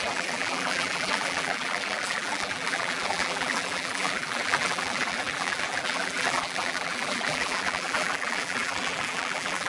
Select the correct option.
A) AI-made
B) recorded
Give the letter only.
A